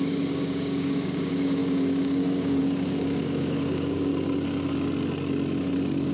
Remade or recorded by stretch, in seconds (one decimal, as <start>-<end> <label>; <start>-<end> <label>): 0.0-4.1 remade; 4.1-6.1 recorded